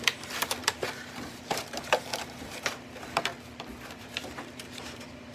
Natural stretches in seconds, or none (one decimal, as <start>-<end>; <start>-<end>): 3.3-3.9